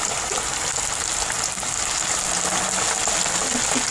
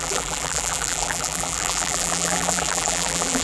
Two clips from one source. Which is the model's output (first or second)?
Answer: second